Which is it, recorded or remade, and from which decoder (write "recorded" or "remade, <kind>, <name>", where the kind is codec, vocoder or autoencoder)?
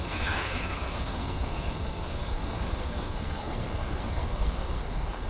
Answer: remade, codec, SNAC